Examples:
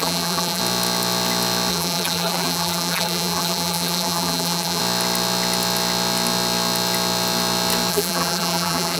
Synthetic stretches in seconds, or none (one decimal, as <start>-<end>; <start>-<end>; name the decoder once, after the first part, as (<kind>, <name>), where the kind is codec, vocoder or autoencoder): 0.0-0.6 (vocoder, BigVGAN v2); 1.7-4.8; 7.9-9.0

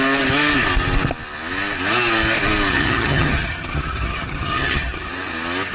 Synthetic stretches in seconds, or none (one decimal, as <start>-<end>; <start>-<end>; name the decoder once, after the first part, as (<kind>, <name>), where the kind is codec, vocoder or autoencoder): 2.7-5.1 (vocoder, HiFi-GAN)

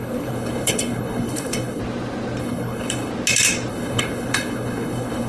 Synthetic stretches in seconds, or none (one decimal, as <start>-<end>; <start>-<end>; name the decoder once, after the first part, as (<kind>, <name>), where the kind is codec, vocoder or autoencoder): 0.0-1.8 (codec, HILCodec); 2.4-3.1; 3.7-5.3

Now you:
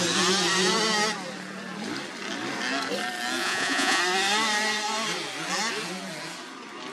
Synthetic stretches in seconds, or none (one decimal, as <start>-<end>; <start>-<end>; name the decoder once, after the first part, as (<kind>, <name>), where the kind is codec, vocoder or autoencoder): 3.4-4.0 (vocoder, Vocos)

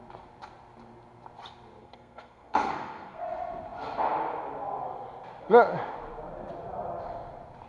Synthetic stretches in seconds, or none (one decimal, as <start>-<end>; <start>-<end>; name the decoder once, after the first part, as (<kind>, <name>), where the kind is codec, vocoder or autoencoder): 1.8-3.2 (codec, SNAC)